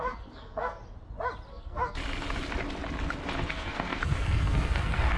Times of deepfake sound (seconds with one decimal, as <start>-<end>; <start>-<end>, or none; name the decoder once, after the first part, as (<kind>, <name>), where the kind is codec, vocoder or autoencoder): 0.0-0.8 (codec, SNAC); 1.5-2.0; 3.5-5.2